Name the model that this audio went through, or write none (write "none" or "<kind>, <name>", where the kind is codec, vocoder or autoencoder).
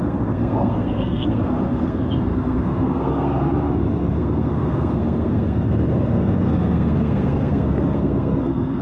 codec, SNAC